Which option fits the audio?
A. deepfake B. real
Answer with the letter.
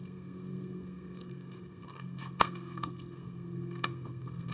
A